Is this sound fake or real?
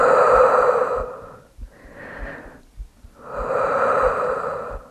real